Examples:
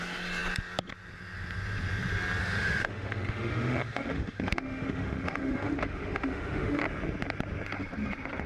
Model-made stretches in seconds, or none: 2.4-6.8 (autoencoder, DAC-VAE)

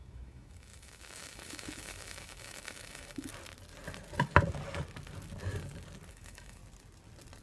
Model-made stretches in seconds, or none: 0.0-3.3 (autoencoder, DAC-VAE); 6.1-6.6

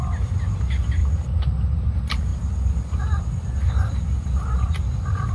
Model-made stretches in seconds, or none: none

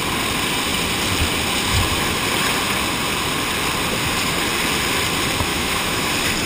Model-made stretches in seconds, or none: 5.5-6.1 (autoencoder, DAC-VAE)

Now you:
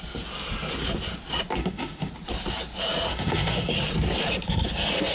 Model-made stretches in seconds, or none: 1.6-2.1 (autoencoder, DAC-VAE); 3.1-3.7